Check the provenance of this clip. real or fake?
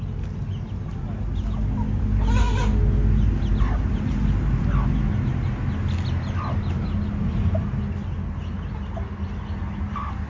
real